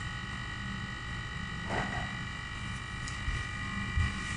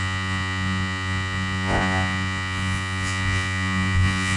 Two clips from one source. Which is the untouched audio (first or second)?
first